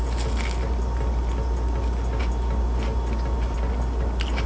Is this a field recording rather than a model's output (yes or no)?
yes